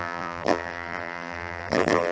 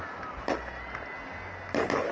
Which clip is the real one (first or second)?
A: second